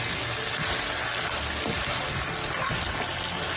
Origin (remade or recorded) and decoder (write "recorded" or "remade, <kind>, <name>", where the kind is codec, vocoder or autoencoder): recorded